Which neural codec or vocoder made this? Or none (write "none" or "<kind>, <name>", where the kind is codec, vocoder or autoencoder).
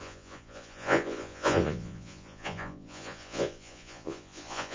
vocoder, Vocos